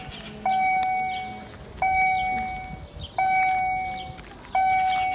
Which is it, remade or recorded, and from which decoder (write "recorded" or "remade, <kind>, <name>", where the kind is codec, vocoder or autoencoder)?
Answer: recorded